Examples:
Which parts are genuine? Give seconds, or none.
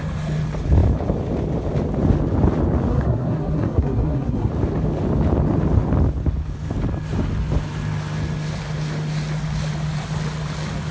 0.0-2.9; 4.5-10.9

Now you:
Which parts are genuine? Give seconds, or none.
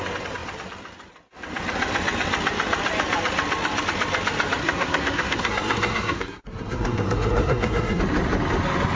0.0-4.6; 8.0-8.9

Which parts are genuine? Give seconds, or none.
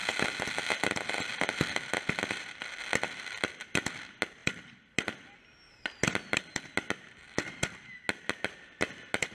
0.0-9.3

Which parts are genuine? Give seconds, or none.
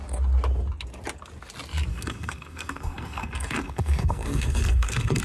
0.0-1.9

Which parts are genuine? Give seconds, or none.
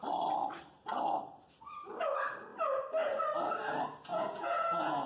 0.0-4.1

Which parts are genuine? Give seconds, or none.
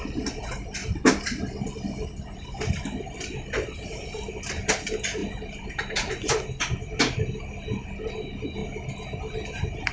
0.0-0.8; 4.4-5.2; 6.1-9.9